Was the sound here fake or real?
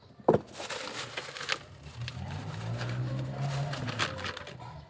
real